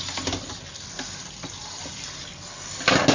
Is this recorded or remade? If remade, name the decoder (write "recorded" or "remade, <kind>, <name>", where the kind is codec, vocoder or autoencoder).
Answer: recorded